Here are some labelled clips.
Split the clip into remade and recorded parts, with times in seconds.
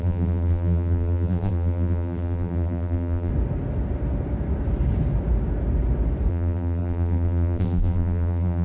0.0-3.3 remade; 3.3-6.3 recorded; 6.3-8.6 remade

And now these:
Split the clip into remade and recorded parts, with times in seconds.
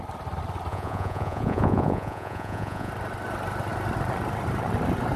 0.0-0.7 recorded; 0.7-2.9 remade; 2.9-5.2 recorded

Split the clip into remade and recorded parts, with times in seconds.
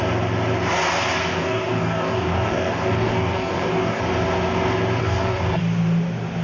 0.0-1.3 recorded; 1.3-4.0 remade; 4.0-5.0 recorded; 5.0-5.6 remade; 5.6-6.4 recorded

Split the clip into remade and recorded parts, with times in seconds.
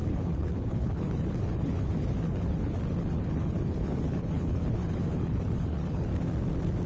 0.0-6.1 remade; 6.1-6.9 recorded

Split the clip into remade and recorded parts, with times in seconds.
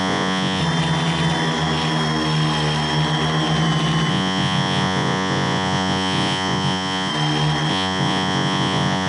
0.0-0.6 remade; 0.6-4.1 recorded; 4.1-7.1 remade; 7.1-7.7 recorded; 7.7-9.1 remade